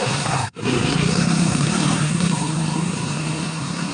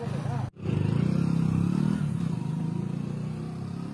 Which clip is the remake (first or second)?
first